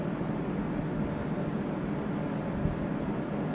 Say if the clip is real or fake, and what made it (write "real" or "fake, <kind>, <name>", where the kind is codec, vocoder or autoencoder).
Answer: real